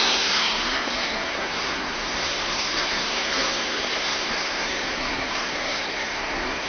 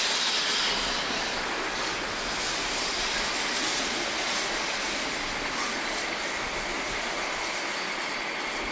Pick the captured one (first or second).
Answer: second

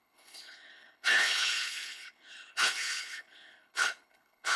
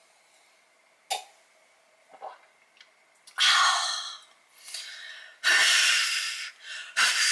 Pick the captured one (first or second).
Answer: second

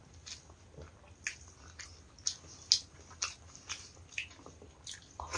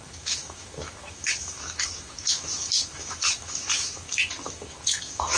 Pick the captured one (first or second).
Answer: first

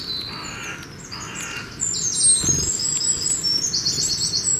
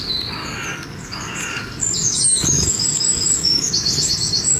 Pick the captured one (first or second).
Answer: first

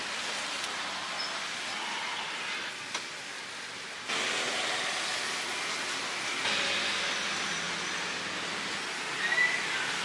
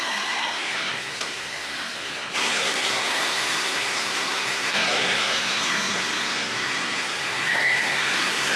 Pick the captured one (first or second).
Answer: first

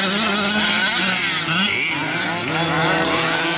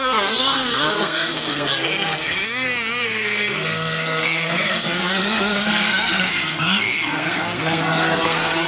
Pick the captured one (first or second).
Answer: first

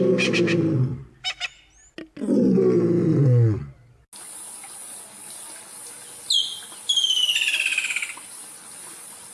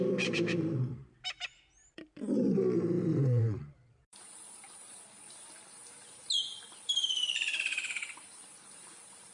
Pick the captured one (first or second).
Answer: first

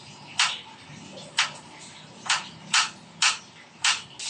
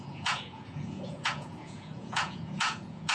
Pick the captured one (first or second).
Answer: first